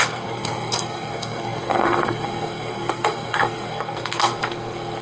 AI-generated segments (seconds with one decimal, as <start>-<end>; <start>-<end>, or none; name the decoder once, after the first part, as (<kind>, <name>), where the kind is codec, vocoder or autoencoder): 0.0-5.0 (codec, SNAC)